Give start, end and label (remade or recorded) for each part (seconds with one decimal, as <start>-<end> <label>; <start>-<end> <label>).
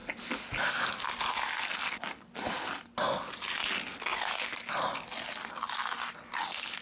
0.0-6.8 recorded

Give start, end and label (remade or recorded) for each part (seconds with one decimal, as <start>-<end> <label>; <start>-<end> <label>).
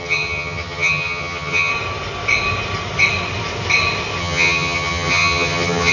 0.0-1.7 remade; 1.7-4.2 recorded; 4.2-5.9 remade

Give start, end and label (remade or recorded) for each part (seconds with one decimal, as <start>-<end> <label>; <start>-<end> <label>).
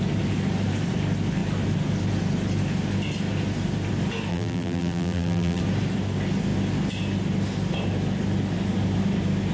0.0-4.3 recorded; 4.3-5.6 remade; 5.6-9.5 recorded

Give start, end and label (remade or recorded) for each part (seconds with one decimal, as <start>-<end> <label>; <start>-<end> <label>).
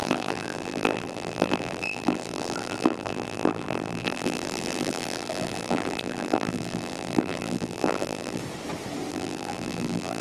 0.0-8.4 remade; 8.4-9.1 recorded; 9.1-10.2 remade